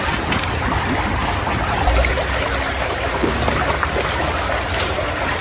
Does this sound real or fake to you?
real